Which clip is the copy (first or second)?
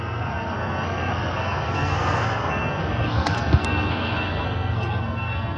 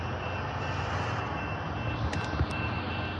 first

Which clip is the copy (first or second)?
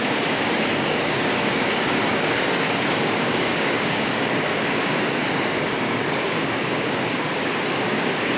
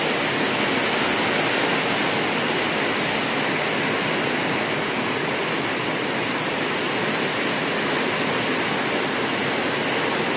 first